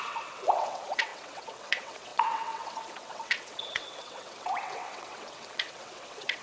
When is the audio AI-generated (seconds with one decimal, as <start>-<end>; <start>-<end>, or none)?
0.0-6.4